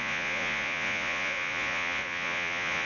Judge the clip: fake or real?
fake